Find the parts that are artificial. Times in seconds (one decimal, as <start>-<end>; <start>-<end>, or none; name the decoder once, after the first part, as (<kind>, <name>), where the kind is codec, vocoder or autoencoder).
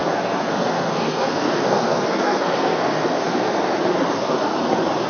0.0-3.5 (codec, SNAC); 4.1-4.5